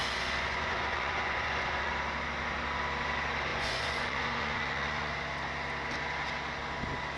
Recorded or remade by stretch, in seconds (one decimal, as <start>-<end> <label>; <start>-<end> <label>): 0.0-1.9 remade; 1.9-3.5 recorded; 3.5-5.1 remade; 5.1-7.2 recorded